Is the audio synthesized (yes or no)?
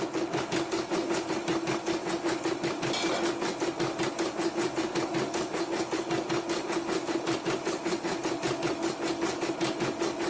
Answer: no